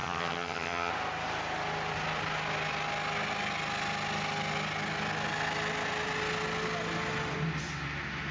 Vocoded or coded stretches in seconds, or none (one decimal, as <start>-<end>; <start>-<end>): 0.0-0.9